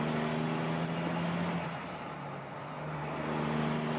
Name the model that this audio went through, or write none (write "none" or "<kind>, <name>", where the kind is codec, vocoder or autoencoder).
none